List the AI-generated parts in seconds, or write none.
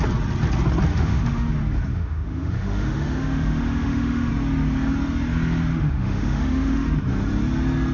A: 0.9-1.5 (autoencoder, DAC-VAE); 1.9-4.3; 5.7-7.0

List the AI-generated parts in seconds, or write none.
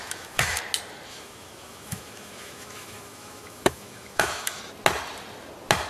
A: 0.0-0.6 (autoencoder, DAC-VAE); 1.1-4.6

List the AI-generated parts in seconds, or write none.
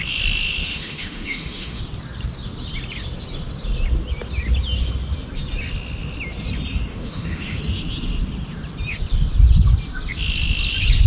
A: 0.6-1.8 (autoencoder, DAC-VAE); 6.9-7.6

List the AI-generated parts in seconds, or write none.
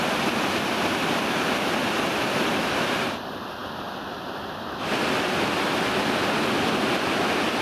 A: none